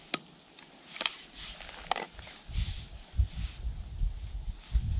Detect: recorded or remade recorded